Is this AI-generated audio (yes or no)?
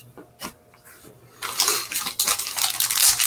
no